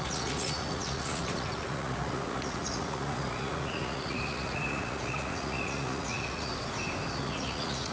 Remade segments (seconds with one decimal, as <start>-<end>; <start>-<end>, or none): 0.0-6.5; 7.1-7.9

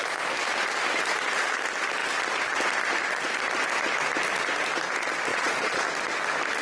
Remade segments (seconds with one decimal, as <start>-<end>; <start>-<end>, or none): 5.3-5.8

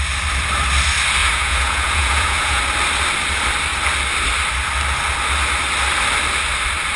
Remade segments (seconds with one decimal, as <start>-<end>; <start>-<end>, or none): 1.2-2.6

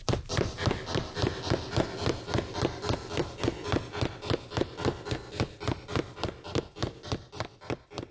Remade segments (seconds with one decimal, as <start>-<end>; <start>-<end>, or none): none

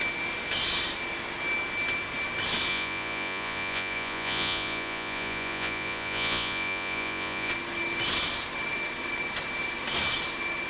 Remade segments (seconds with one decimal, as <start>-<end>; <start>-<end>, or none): 2.7-7.5